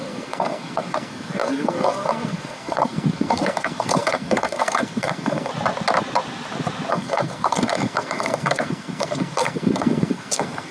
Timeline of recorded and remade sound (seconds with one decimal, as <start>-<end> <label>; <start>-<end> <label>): 0.0-5.5 remade; 5.5-6.9 recorded; 6.9-10.7 remade

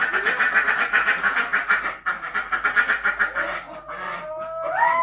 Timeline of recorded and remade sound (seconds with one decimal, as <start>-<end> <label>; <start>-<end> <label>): 0.0-5.0 recorded